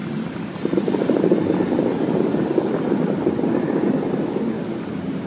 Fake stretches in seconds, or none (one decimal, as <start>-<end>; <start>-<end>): none